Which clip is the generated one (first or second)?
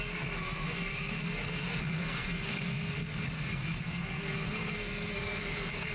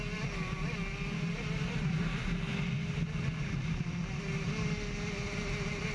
first